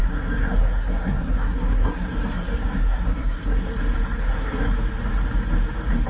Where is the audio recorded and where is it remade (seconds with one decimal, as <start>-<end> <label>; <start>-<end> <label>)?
0.0-3.7 remade; 3.7-4.2 recorded; 4.2-4.7 remade; 4.7-6.1 recorded